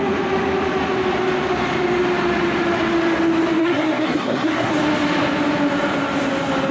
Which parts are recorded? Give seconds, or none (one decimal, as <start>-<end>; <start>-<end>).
0.0-3.6; 4.7-6.7